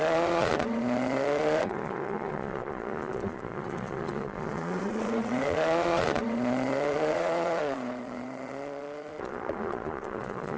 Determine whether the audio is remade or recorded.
remade